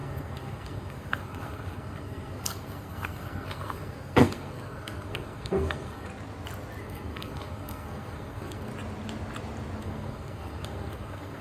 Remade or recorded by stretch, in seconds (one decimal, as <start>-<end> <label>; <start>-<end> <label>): 0.0-6.1 remade; 6.1-6.8 recorded; 6.8-8.7 remade; 8.7-9.8 recorded; 9.8-11.4 remade